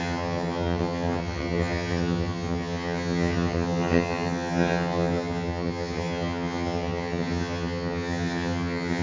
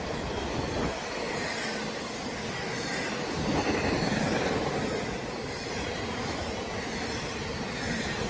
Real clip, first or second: second